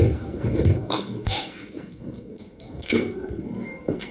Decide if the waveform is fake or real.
fake